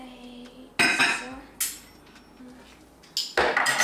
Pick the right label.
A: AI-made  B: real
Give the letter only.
B